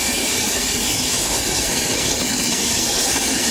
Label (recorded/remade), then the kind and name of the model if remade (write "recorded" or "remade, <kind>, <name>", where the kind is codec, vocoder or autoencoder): remade, codec, SNAC